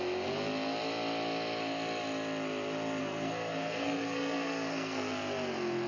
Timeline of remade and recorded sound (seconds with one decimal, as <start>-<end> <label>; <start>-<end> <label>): 0.0-3.0 recorded; 3.0-5.1 remade; 5.1-5.9 recorded